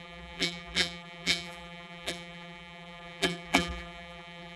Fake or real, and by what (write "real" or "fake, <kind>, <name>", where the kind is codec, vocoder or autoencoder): fake, vocoder, BigVGAN v2